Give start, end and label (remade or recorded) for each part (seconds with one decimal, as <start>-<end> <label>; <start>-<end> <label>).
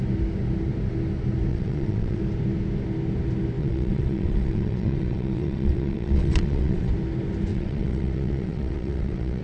0.0-1.5 recorded; 1.5-2.2 remade; 2.2-3.6 recorded; 3.6-6.9 remade; 6.9-7.5 recorded; 7.5-9.4 remade